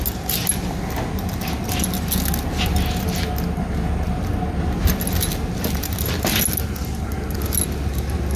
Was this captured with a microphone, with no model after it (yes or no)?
yes